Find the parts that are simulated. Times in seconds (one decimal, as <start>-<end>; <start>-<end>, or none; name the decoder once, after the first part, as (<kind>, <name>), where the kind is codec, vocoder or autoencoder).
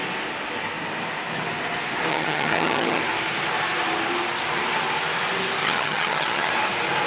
2.1-3.0 (vocoder, HiFi-GAN); 5.6-6.5